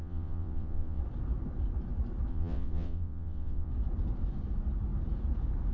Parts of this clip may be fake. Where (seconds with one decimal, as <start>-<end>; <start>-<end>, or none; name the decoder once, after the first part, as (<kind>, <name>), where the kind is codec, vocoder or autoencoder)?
0.0-1.0 (vocoder, WaveNeXt); 2.3-3.7